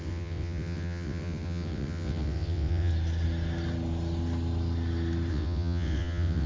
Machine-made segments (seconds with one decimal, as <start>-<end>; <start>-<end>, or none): 0.0-2.9; 5.3-6.5